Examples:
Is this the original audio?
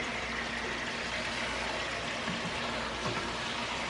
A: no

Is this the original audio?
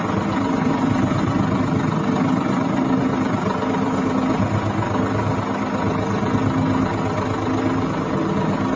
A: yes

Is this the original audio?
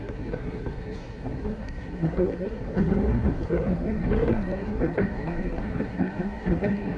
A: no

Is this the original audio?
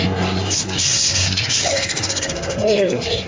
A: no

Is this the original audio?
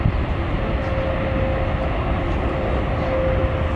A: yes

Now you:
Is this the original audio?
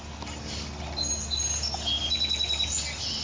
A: yes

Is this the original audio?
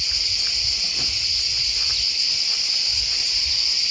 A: yes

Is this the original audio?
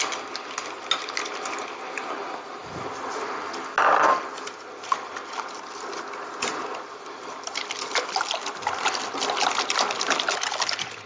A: yes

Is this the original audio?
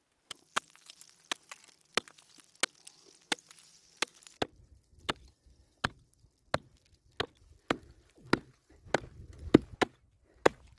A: yes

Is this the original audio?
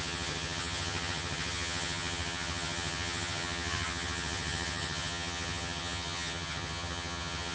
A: no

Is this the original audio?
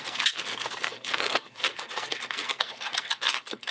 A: no